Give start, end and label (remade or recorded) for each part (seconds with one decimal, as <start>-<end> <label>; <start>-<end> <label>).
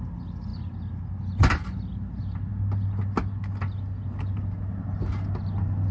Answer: 0.0-5.9 recorded